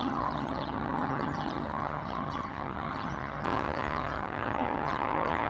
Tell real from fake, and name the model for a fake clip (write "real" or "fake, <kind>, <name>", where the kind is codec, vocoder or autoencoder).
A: fake, vocoder, HiFi-GAN